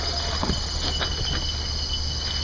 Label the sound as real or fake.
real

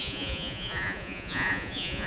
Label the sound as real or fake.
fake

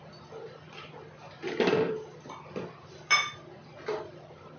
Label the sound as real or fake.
real